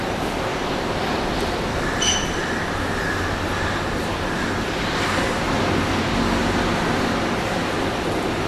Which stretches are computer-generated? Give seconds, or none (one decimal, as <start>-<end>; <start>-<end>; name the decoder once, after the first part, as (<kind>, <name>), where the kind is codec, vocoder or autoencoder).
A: 0.5-5.6 (vocoder, BigVGAN v2)

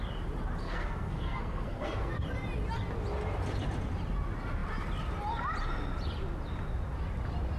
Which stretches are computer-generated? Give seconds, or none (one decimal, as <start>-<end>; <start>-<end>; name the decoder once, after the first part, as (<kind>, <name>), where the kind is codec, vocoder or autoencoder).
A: 0.6-2.1 (codec, SNAC)

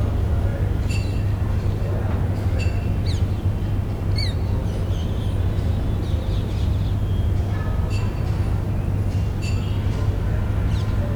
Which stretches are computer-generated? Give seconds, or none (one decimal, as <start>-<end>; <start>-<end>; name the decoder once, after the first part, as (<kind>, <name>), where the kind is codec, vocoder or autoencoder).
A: none

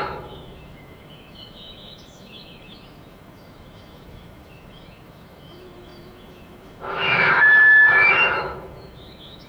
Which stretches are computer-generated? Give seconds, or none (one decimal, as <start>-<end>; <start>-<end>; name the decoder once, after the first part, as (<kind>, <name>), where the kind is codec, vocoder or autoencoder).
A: 0.0-9.5 (autoencoder, DAC-VAE)